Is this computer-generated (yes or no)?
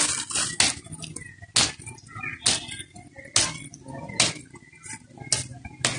no